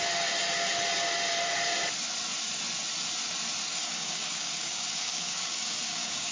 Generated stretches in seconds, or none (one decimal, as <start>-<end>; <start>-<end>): 3.7-6.3